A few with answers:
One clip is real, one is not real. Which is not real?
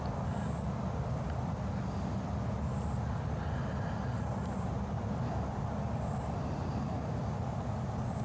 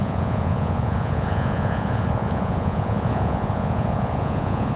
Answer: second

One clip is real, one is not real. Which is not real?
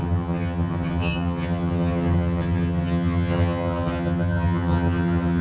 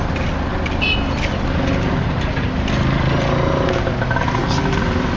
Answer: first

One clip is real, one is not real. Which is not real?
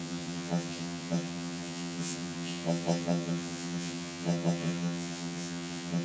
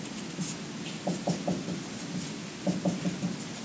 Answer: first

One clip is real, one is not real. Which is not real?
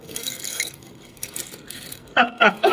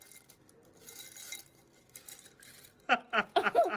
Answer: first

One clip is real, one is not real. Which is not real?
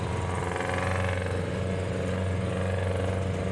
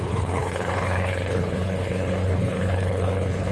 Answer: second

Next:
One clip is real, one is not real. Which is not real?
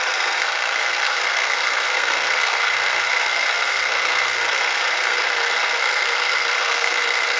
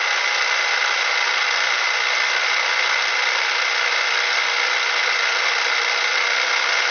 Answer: first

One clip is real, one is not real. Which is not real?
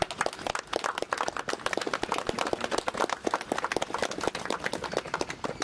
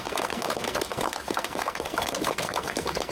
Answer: second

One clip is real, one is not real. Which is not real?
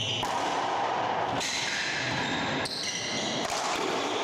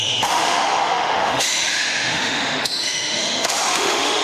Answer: second